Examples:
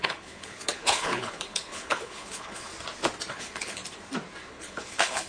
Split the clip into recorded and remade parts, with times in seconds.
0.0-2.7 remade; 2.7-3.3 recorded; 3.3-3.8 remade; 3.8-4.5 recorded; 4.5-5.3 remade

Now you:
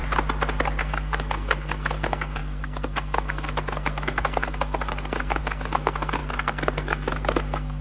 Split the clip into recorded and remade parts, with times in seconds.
0.0-0.8 recorded; 0.8-7.8 remade

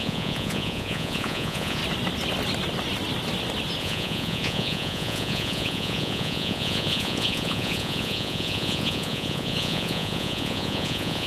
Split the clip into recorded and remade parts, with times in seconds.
0.0-1.8 remade; 1.8-3.8 recorded; 3.8-11.3 remade

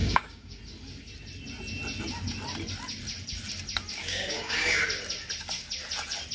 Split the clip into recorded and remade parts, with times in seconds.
0.0-0.6 remade; 0.6-4.0 recorded; 4.0-4.8 remade; 4.8-6.3 recorded

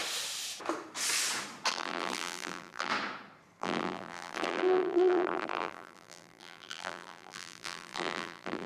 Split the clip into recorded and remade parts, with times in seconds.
0.0-1.7 recorded; 1.7-2.9 remade; 2.9-3.6 recorded; 3.6-8.7 remade

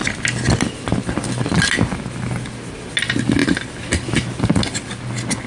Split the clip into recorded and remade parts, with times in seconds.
0.0-5.5 recorded

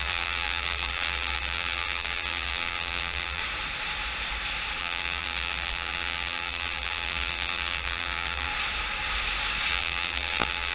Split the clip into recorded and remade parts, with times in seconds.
0.0-3.4 remade; 3.4-4.8 recorded; 4.8-8.5 remade; 8.5-9.7 recorded; 9.7-10.7 remade

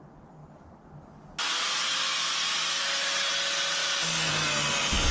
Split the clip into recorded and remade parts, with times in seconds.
0.0-5.1 recorded